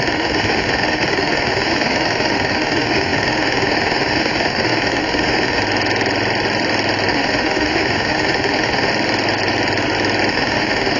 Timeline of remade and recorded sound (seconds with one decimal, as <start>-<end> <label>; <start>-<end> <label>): 0.0-5.6 remade; 5.6-7.1 recorded; 7.1-8.9 remade; 8.9-10.3 recorded; 10.3-11.0 remade